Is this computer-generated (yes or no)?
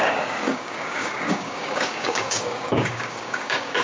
yes